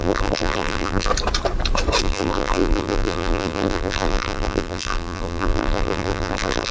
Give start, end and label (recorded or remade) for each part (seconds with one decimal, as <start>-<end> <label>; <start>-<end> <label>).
0.0-1.1 remade; 1.1-2.0 recorded; 2.0-6.7 remade